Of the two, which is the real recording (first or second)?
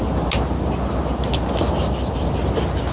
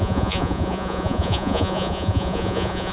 first